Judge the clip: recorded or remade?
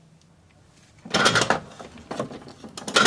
recorded